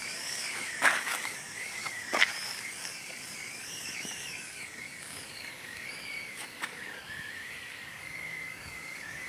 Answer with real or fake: fake